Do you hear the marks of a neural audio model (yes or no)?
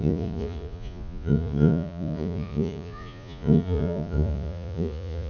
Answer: yes